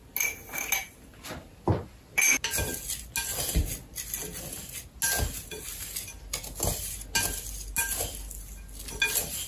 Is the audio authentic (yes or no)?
yes